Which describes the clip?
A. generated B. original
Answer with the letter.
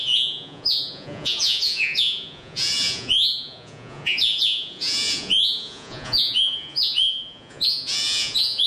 A